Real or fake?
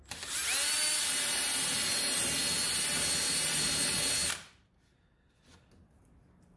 real